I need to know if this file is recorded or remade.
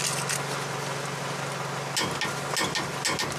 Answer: recorded